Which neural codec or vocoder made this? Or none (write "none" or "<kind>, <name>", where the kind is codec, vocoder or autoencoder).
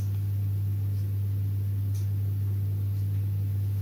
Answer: none